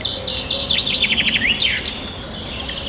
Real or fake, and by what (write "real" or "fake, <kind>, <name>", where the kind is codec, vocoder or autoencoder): real